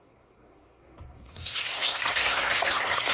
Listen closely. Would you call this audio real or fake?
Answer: fake